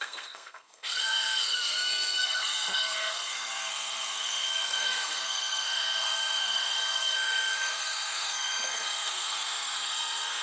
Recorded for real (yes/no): no